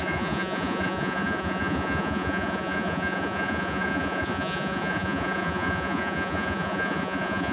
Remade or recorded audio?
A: remade